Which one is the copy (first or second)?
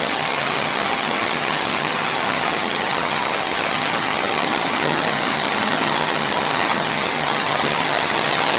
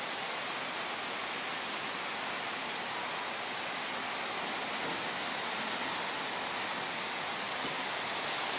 first